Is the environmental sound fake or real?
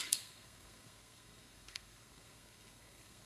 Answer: fake